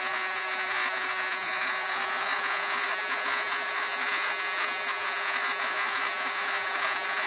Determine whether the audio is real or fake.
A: fake